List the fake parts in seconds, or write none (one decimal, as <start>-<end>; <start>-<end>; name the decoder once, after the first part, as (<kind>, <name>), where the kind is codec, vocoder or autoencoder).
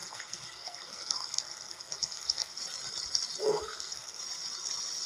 0.0-2.6 (codec, SNAC); 3.4-4.2